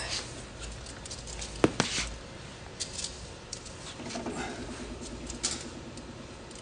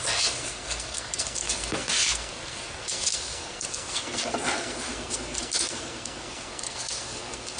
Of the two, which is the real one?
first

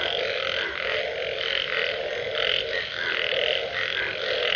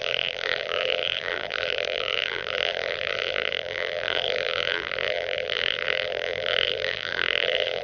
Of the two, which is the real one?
first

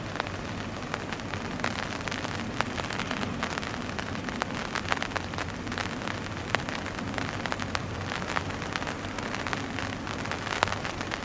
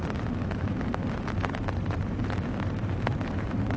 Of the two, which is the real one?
first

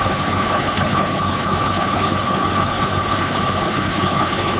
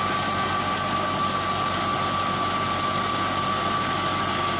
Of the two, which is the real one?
second